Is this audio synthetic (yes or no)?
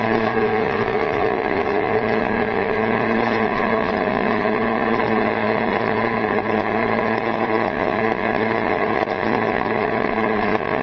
yes